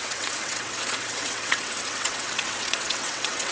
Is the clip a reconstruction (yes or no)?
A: yes